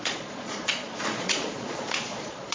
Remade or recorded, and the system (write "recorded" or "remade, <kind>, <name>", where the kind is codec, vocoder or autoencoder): remade, vocoder, Vocos